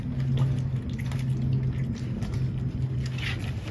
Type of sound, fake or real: real